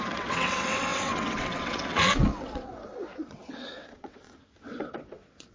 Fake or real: fake